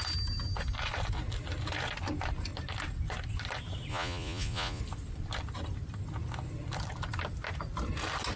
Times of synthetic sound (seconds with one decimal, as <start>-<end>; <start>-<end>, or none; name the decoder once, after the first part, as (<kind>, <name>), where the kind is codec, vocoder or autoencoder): 3.9-4.8 (vocoder, Vocos)